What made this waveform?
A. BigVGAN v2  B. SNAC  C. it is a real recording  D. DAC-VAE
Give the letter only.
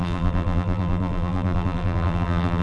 A